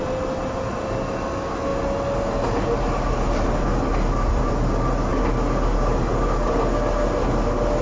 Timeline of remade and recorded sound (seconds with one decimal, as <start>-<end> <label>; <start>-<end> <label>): 0.0-7.8 recorded